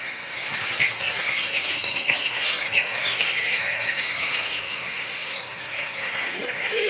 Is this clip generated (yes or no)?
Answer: yes